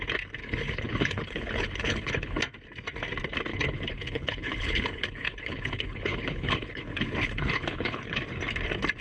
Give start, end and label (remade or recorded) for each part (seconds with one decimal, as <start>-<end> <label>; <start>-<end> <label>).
0.0-0.4 recorded; 0.4-2.4 remade; 2.4-3.5 recorded; 3.5-8.2 remade; 8.2-9.0 recorded